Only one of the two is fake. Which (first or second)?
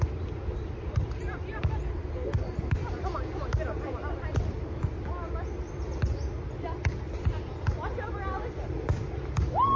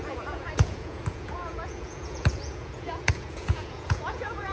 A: second